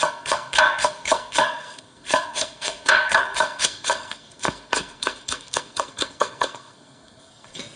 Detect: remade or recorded remade